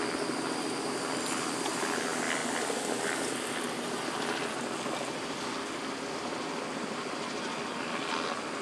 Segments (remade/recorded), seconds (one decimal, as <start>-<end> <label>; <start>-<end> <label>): 0.0-2.4 recorded; 2.4-3.3 remade; 3.3-8.6 recorded